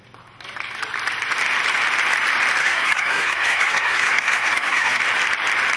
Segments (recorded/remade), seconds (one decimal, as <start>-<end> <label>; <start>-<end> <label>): 0.0-2.6 recorded; 2.6-5.0 remade; 5.0-5.8 recorded